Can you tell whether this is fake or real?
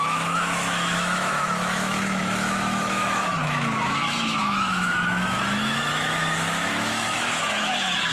fake